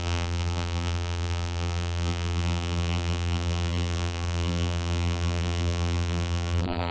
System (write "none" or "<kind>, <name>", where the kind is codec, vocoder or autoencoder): vocoder, BigVGAN v2